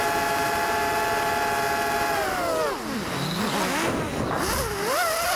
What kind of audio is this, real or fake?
real